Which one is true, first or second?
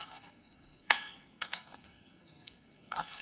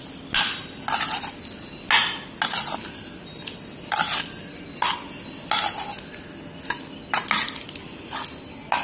second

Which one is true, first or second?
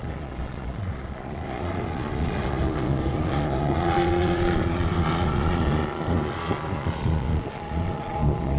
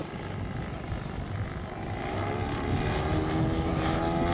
second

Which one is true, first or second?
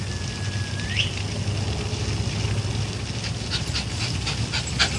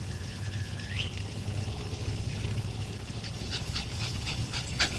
first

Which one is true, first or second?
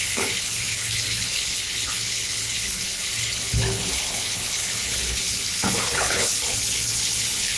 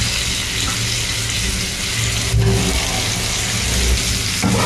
second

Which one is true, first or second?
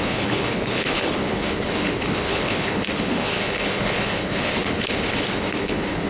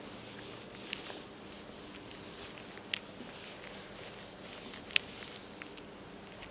second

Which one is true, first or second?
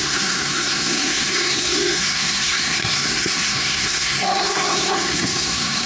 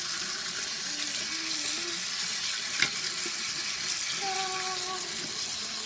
second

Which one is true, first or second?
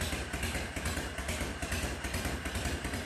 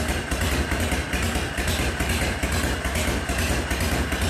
second